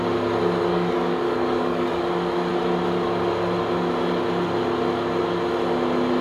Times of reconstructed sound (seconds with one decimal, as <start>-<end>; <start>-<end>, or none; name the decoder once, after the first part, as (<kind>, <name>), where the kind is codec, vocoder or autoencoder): 0.7-2.0 (codec, DAC)